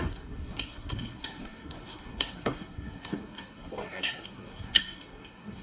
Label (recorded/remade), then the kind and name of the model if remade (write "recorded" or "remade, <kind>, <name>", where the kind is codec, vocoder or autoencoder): remade, codec, SNAC